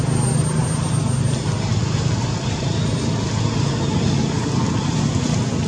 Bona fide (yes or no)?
yes